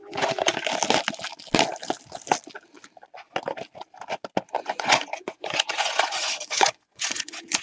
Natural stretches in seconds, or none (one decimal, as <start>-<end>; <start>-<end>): 0.5-4.5